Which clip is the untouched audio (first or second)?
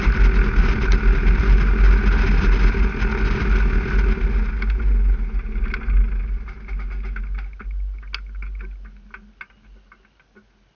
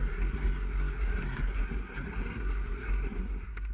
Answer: first